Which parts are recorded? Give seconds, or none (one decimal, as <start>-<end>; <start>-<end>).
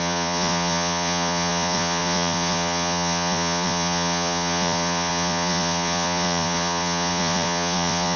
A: none